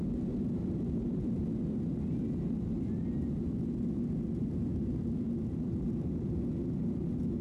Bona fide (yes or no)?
yes